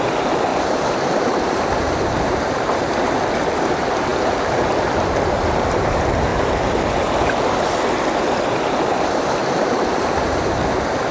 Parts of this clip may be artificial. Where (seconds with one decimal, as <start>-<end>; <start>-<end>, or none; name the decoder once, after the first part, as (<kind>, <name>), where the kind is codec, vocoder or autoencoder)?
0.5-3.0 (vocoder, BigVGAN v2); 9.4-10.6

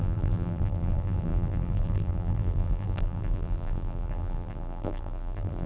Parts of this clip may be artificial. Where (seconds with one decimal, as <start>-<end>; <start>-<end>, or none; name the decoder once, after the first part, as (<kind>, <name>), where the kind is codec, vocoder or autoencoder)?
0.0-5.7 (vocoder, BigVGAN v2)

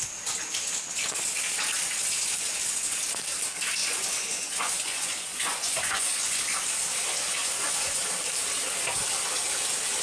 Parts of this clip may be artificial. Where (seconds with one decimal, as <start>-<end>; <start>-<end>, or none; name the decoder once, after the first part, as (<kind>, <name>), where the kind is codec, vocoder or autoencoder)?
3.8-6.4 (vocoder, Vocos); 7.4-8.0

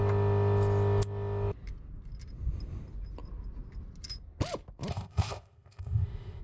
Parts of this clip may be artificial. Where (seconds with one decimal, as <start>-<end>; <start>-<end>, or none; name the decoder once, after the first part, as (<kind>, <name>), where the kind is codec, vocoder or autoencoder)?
4.9-6.4 (codec, ZipCodec)

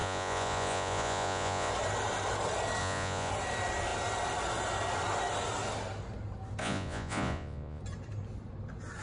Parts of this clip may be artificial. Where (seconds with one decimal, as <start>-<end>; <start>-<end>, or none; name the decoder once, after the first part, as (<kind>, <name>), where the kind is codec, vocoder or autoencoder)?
0.0-1.7 (vocoder, Vocos); 2.8-3.3; 6.6-7.8

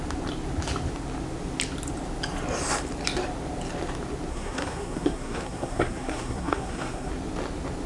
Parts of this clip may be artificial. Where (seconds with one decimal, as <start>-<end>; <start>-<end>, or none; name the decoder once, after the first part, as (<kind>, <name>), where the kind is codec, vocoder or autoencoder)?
4.3-7.1 (codec, SNAC)

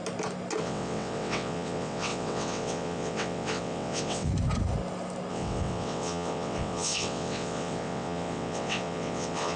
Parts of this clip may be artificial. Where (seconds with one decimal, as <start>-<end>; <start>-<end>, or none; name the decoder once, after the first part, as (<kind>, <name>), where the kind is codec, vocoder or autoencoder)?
0.6-4.3 (vocoder, WaveNeXt); 5.3-9.6

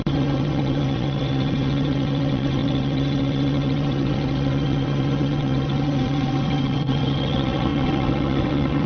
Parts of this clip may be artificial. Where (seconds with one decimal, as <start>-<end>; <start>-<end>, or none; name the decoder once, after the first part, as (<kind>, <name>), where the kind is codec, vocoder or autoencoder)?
0.0-8.9 (vocoder, WaveNeXt)